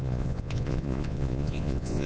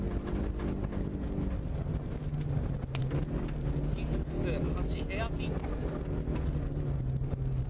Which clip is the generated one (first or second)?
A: first